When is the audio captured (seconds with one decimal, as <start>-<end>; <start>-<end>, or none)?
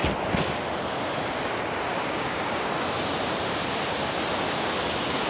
0.0-1.9; 2.7-5.3